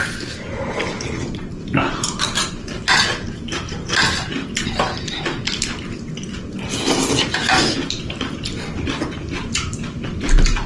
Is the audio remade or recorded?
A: recorded